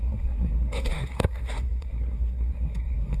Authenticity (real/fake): fake